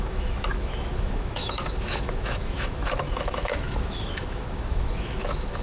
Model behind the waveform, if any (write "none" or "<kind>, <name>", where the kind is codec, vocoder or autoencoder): autoencoder, DAC-VAE